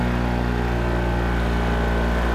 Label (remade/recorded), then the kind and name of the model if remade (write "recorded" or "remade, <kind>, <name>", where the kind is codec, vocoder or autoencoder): recorded